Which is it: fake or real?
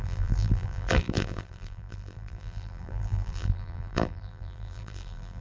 fake